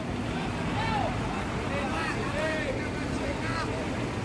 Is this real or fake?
real